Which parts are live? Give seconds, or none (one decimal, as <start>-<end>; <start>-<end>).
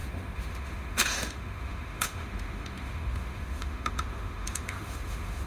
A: none